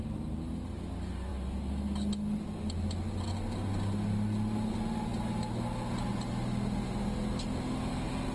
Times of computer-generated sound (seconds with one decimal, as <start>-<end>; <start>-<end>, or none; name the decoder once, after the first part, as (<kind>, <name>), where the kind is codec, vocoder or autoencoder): none

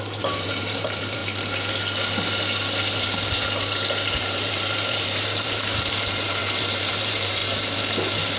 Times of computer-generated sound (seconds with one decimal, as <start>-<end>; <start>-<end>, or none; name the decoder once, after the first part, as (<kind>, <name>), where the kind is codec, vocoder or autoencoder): 0.0-1.2 (vocoder, BigVGAN v2); 4.2-7.4